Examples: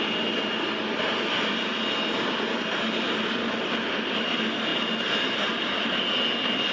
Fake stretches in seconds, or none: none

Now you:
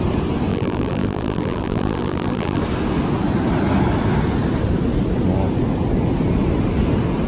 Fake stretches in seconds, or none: 0.5-2.6 (vocoder, BigVGAN v2)

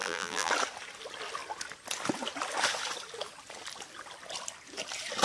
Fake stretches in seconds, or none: 0.0-0.5 (vocoder, BigVGAN v2)

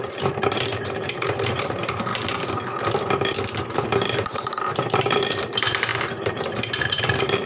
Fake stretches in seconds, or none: 0.0-2.1 (vocoder, BigVGAN v2); 3.6-7.5